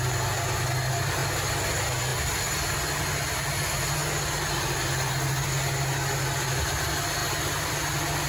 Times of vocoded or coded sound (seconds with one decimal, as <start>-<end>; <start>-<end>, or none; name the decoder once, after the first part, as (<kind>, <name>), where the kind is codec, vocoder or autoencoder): none